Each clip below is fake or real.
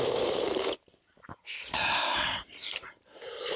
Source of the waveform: fake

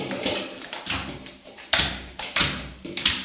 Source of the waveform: fake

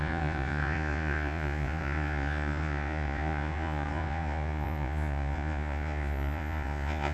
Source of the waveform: fake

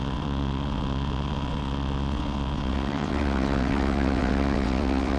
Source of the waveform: fake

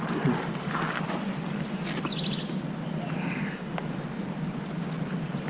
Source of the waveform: real